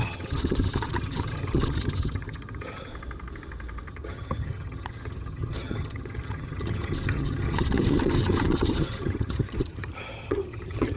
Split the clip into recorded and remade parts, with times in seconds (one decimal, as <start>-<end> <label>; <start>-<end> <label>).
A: 0.0-2.9 remade; 2.9-3.9 recorded; 3.9-11.0 remade